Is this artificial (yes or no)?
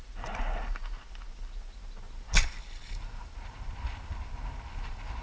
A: no